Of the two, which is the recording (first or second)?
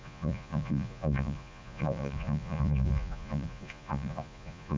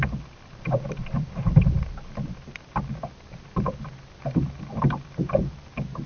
second